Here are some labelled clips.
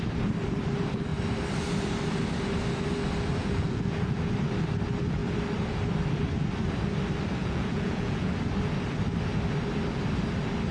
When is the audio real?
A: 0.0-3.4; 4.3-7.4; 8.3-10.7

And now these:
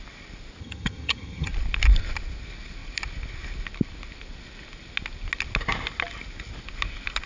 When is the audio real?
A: 0.0-0.6; 1.5-7.3

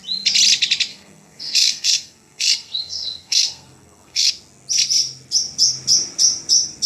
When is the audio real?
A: 0.0-0.9; 4.3-6.9

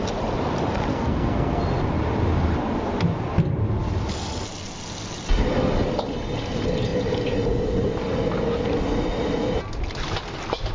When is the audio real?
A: 0.0-0.9; 1.6-10.7